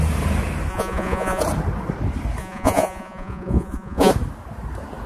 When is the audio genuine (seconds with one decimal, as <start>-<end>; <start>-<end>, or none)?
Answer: 0.0-0.7; 1.4-2.4; 4.1-5.1